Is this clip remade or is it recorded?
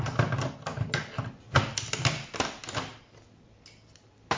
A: recorded